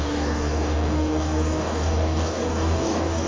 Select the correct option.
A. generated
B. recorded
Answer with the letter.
A